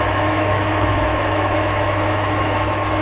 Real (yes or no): no